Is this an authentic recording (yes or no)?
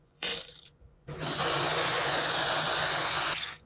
no